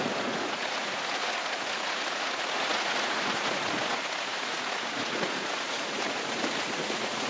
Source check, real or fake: fake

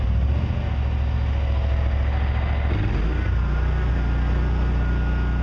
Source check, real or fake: real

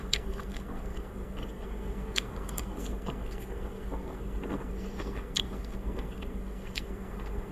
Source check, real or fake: fake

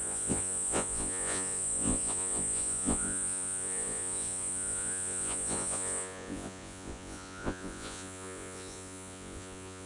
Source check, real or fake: fake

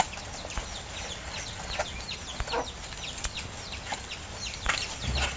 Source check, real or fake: real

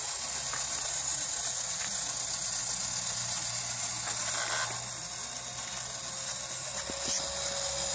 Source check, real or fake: real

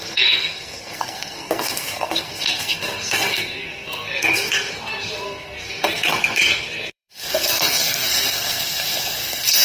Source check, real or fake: fake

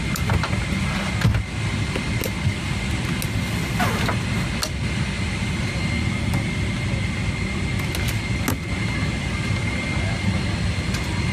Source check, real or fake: real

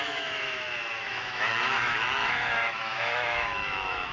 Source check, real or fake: fake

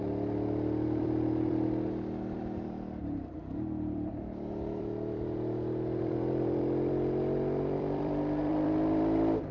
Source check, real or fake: fake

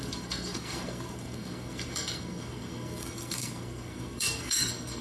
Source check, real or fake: fake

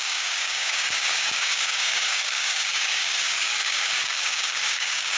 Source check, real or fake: fake